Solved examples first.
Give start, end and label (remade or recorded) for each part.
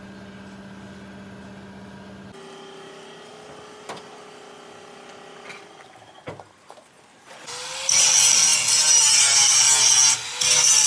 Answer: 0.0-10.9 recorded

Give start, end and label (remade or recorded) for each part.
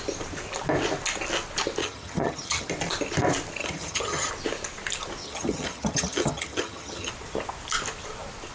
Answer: 0.0-1.8 recorded; 1.8-2.7 remade; 2.7-3.6 recorded; 3.6-4.3 remade; 4.3-5.2 recorded; 5.2-7.1 remade; 7.1-8.5 recorded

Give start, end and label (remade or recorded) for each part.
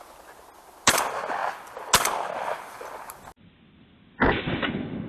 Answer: 0.0-5.1 recorded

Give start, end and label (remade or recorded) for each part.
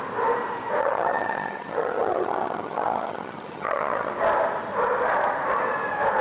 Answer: 0.0-0.8 recorded; 0.8-4.1 remade; 4.1-6.2 recorded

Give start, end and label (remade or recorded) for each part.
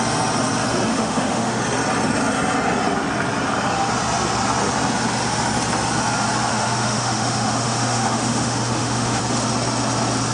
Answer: 0.0-0.9 recorded; 0.9-1.6 remade; 1.6-6.5 recorded; 6.5-9.2 remade; 9.2-10.3 recorded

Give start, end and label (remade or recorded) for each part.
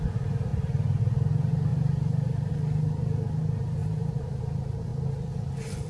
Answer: 0.0-1.7 recorded; 1.7-2.5 remade; 2.5-3.8 recorded; 3.8-4.4 remade; 4.4-5.9 recorded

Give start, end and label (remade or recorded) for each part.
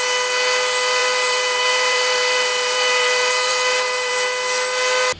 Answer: 0.0-1.0 recorded; 1.0-4.1 remade; 4.1-5.2 recorded